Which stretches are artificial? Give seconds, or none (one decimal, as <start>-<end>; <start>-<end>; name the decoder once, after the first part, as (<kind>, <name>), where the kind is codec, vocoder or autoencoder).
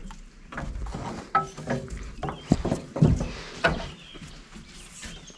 none